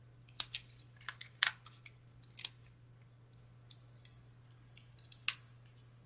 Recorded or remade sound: recorded